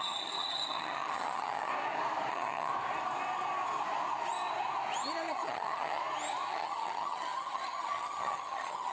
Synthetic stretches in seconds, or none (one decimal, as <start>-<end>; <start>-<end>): 0.0-1.7; 2.3-2.7; 5.3-6.0; 6.5-8.9